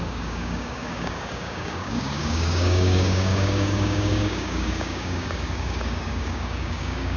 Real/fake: fake